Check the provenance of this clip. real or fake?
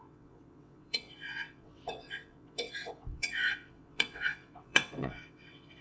fake